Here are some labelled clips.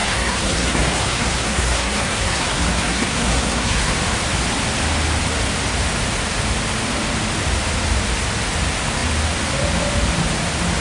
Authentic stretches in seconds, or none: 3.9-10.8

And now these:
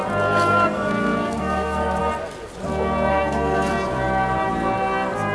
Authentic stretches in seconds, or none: 0.0-0.5; 2.0-3.1; 3.7-5.3

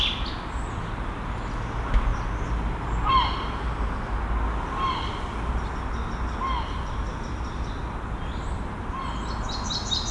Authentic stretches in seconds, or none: 0.0-10.1

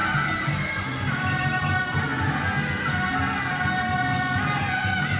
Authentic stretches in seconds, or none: 0.0-5.2

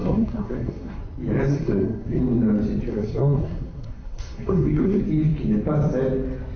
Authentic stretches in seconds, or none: 1.0-1.5; 2.2-2.9; 5.0-6.6